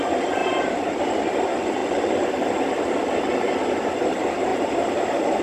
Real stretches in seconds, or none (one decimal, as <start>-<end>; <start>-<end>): 0.0-0.4; 1.0-1.8; 2.7-4.5